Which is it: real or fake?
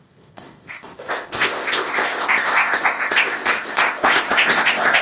fake